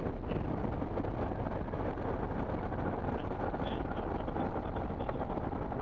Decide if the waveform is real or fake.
real